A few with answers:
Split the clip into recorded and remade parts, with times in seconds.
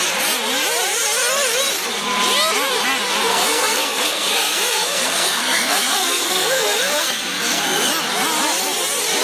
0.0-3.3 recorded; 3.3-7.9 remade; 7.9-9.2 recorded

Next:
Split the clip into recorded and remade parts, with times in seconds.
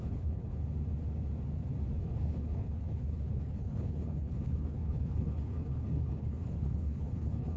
0.0-0.5 remade; 0.5-2.0 recorded; 2.0-7.6 remade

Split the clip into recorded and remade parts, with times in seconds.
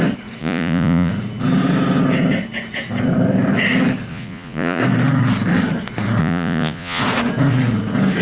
0.0-0.4 recorded; 0.4-1.1 remade; 1.1-4.1 recorded; 4.1-4.8 remade; 4.8-6.2 recorded; 6.2-7.0 remade; 7.0-8.2 recorded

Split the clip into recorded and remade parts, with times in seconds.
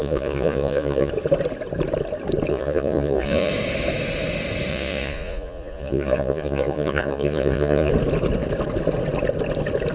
0.0-1.1 remade; 1.1-2.5 recorded; 2.5-3.5 remade; 3.5-4.7 recorded; 4.7-7.9 remade; 7.9-9.9 recorded